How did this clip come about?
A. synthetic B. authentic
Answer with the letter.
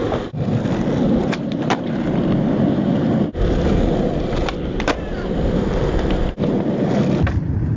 B